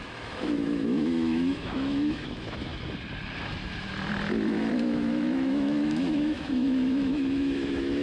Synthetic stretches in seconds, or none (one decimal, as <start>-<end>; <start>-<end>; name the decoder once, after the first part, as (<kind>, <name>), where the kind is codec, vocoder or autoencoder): 0.0-2.7 (autoencoder, DAC-VAE); 4.6-8.0